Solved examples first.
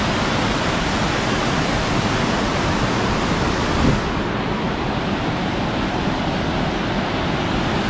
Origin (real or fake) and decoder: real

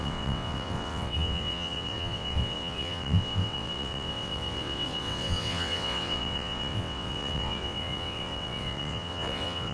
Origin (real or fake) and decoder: fake, vocoder, WaveNeXt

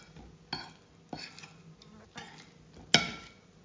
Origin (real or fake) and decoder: real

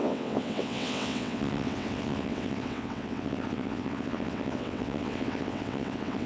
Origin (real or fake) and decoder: fake, vocoder, WaveNeXt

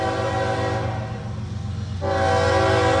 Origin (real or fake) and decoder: real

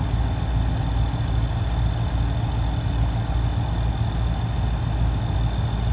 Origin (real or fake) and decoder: real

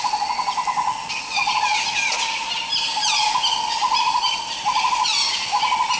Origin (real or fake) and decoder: real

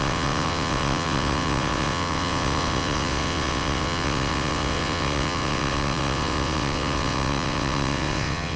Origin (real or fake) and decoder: fake, vocoder, WaveNeXt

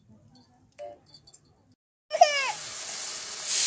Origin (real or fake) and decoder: real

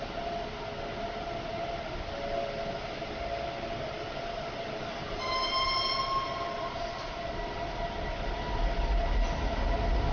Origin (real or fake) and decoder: real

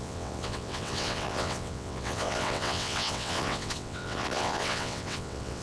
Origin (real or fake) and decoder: fake, vocoder, WaveNeXt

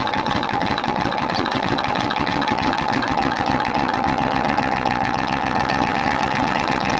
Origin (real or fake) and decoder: fake, vocoder, WaveNeXt